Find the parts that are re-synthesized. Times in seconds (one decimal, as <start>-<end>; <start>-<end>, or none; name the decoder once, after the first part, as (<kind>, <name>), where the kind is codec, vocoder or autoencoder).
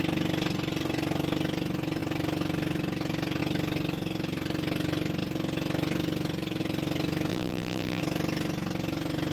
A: 7.3-8.0 (vocoder, BigVGAN v2)